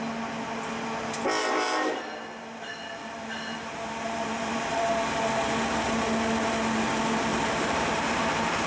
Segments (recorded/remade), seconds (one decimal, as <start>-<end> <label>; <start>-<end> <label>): 0.0-1.4 recorded; 1.4-5.2 remade; 5.2-7.3 recorded; 7.3-8.7 remade